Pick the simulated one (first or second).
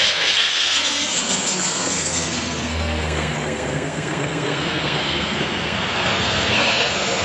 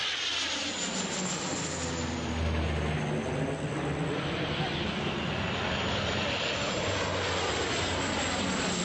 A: first